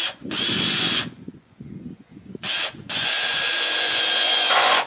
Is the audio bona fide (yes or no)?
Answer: no